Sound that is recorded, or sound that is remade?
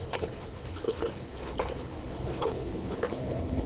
remade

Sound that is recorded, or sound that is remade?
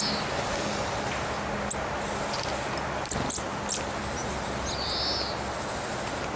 recorded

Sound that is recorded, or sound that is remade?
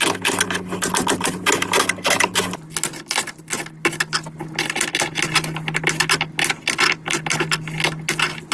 recorded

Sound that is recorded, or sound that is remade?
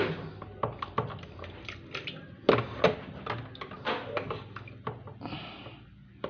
recorded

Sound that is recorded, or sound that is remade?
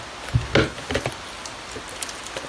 recorded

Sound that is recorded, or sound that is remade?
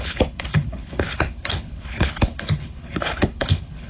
remade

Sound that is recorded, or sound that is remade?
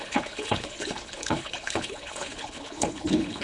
remade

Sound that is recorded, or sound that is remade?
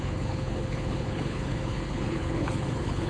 remade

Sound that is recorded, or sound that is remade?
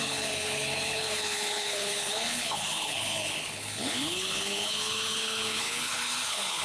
remade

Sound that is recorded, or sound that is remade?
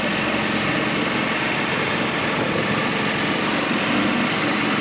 recorded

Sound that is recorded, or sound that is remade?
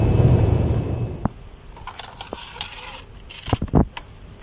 recorded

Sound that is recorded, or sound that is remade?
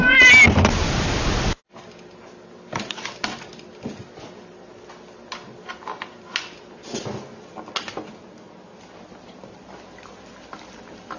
recorded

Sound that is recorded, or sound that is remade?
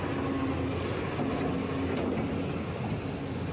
recorded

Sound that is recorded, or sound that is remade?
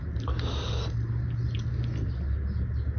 recorded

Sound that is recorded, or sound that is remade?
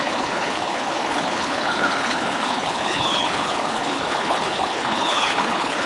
remade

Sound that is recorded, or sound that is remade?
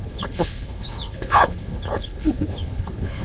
remade